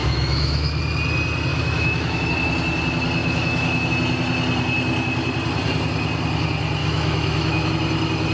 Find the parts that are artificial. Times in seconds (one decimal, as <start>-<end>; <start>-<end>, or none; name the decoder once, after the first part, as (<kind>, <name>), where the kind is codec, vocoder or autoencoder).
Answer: 0.0-0.8 (autoencoder, DAC-VAE); 1.5-2.3; 3.2-3.9; 6.8-7.7